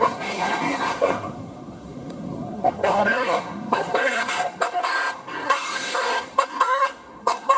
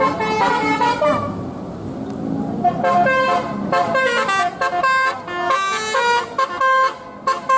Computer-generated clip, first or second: first